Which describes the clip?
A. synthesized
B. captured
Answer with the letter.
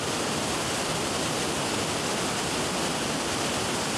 B